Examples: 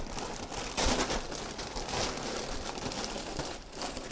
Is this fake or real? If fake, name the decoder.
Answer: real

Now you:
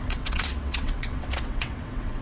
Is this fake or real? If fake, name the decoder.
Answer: fake, vocoder, WaveNeXt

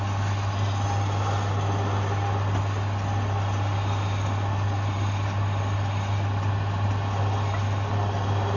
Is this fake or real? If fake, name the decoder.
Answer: real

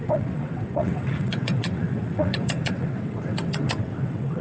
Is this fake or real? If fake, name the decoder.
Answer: fake, vocoder, WaveNeXt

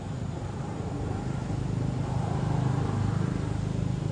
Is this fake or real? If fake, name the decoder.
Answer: real